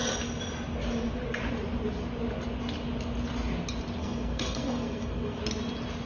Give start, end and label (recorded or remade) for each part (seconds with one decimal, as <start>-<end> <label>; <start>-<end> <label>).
0.0-4.0 recorded; 4.0-5.4 remade; 5.4-6.1 recorded

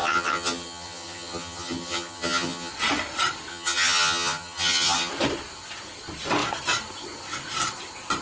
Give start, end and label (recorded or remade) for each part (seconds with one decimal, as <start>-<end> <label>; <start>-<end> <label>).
0.0-2.7 remade; 2.7-3.5 recorded; 3.5-5.1 remade; 5.1-8.2 recorded

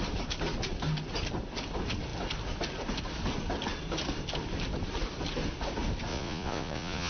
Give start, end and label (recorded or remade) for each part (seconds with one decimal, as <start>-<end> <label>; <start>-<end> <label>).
0.0-6.1 recorded; 6.1-7.1 remade

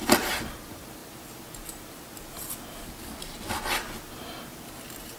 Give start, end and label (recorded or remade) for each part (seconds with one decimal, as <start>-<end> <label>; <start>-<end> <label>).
0.0-1.0 remade; 1.0-4.1 recorded; 4.1-5.2 remade

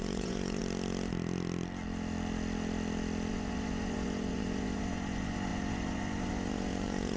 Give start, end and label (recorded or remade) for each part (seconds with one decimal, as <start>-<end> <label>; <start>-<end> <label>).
0.0-0.6 remade; 0.6-3.3 recorded; 3.3-7.2 remade